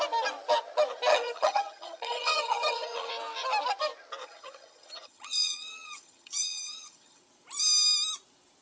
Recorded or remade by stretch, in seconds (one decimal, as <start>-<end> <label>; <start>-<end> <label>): 0.0-1.1 recorded; 1.1-3.1 remade; 3.1-4.2 recorded; 4.2-7.2 remade; 7.2-8.6 recorded

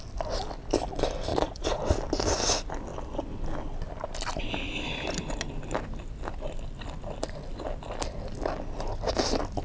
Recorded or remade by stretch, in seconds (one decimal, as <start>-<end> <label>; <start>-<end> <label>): 0.0-1.3 recorded; 1.3-1.8 remade; 1.8-9.6 recorded

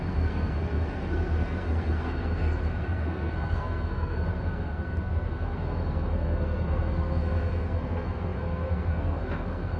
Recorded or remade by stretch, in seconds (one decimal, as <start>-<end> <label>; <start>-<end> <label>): 0.0-9.8 remade

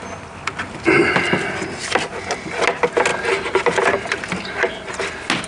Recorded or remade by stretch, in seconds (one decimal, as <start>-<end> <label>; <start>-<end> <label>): 0.0-5.5 recorded

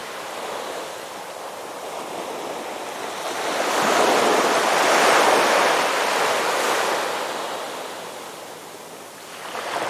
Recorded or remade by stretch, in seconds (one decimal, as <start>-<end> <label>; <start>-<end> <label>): 0.0-1.2 remade; 1.2-9.9 recorded

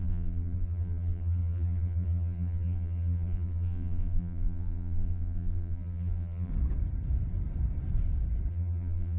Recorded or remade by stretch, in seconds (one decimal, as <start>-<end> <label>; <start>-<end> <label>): 0.0-6.5 remade; 6.5-8.5 recorded; 8.5-9.2 remade

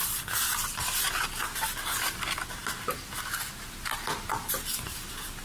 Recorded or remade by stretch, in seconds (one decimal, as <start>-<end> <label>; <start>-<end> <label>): 0.0-5.4 recorded